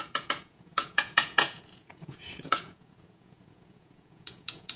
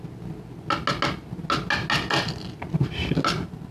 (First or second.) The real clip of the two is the second